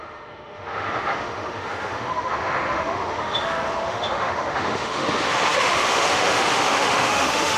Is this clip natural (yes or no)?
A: no